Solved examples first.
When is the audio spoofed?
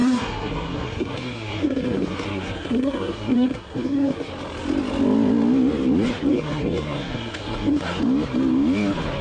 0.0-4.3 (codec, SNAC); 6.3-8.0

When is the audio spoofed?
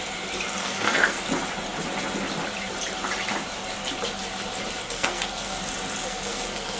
0.6-1.2 (codec, SNAC); 4.8-5.6; 6.0-6.8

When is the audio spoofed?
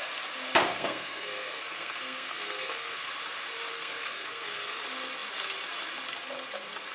0.7-3.1 (codec, SNAC); 3.7-4.8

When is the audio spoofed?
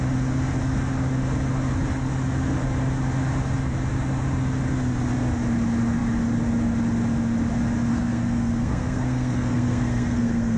7.9-10.6 (codec, SNAC)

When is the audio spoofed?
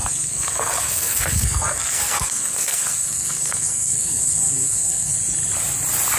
0.0-5.1 (codec, SNAC)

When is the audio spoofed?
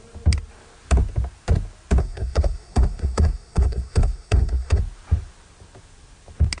2.0-4.8 (codec, SNAC)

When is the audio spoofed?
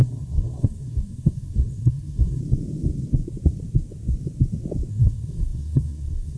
0.0-2.4 (codec, SNAC); 4.9-6.4